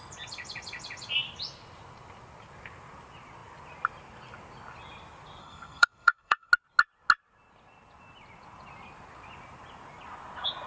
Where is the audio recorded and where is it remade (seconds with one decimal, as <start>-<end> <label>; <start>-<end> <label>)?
0.0-5.4 recorded; 5.4-6.5 remade; 6.5-10.7 recorded